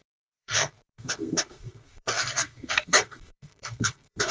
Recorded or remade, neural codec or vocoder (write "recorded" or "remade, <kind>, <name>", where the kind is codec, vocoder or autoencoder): remade, codec, SNAC